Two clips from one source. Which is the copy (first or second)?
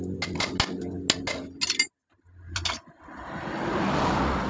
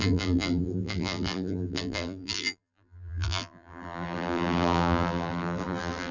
second